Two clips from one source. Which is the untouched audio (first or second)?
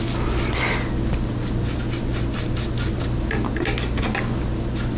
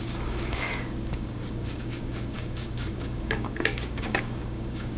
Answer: first